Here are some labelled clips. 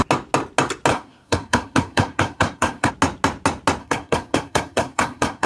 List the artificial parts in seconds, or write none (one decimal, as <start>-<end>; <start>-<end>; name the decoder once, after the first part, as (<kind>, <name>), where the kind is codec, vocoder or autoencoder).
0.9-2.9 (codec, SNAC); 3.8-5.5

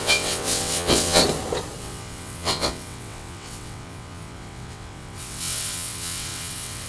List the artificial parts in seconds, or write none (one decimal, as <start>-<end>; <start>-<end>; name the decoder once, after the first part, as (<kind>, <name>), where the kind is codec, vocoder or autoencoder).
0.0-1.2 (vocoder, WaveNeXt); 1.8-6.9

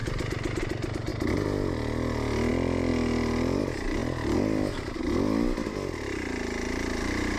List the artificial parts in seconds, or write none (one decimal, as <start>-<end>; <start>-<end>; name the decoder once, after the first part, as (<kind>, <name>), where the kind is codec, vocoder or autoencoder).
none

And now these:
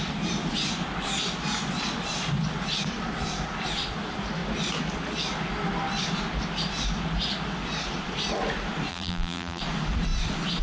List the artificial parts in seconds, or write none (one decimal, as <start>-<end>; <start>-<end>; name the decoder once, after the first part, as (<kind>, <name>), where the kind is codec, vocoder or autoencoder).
8.9-9.6 (vocoder, BigVGAN v2)

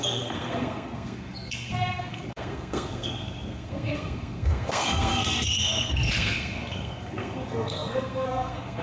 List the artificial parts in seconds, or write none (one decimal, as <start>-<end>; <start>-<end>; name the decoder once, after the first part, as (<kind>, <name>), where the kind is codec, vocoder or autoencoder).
0.0-8.8 (codec, SNAC)

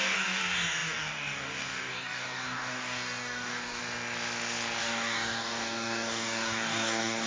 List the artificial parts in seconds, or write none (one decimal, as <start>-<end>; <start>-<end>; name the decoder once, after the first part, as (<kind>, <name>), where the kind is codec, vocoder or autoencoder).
0.0-3.8 (codec, DAC); 4.8-7.3

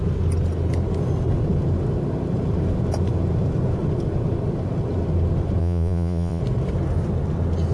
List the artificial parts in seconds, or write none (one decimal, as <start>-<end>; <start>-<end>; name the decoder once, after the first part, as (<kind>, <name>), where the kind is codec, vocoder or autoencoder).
5.6-6.4 (vocoder, Vocos)